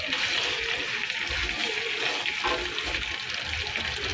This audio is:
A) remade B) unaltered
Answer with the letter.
B